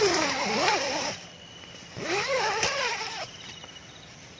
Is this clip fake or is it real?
real